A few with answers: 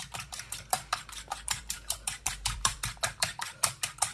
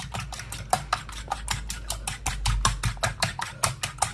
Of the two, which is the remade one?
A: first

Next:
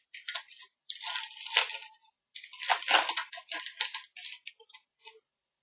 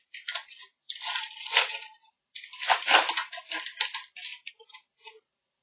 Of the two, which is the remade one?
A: second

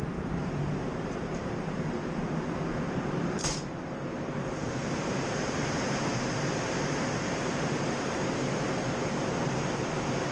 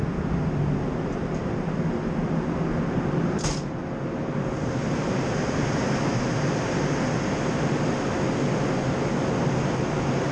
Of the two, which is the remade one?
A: first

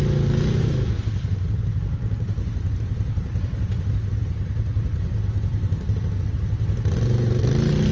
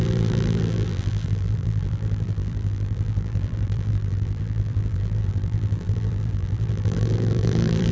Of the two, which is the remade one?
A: second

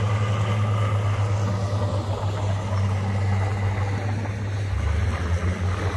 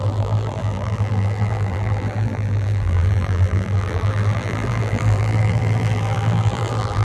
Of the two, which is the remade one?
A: second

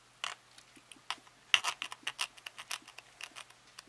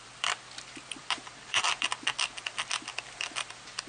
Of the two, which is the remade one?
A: second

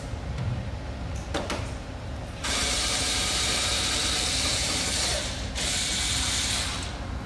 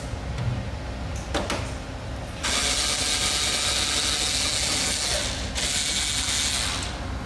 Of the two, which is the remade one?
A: first